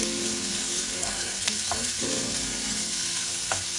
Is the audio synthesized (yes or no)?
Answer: yes